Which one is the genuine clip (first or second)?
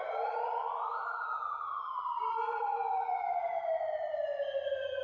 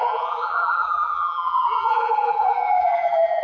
first